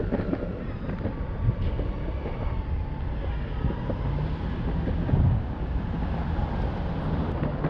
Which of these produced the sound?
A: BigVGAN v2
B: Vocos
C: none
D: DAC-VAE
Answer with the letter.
C